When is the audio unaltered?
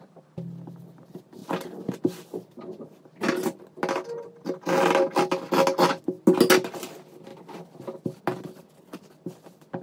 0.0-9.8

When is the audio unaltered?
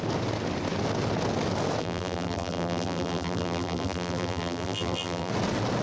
0.0-1.8; 5.3-5.8